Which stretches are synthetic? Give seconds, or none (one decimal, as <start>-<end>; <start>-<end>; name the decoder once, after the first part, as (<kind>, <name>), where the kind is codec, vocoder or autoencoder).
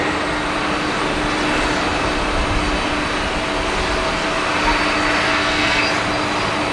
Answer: 5.2-5.8 (codec, SNAC)